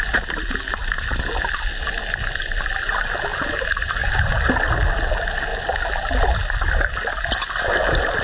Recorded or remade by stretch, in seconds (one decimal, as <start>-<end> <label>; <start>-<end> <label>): 0.0-3.3 recorded; 3.3-4.3 remade; 4.3-8.2 recorded